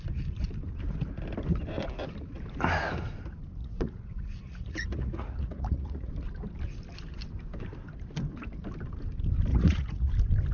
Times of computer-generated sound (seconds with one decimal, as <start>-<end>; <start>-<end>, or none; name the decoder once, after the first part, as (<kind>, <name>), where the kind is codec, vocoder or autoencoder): 3.6-6.1 (vocoder, Vocos); 9.5-10.1